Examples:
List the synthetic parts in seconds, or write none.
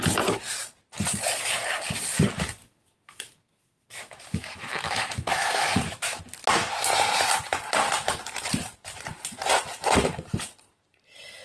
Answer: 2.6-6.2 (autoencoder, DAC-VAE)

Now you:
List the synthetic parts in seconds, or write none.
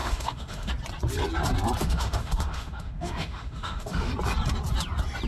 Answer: 0.0-0.7 (autoencoder, DAC-VAE); 1.8-4.1